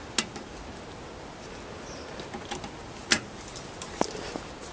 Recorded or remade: recorded